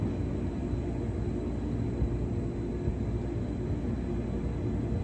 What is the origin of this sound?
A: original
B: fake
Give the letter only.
A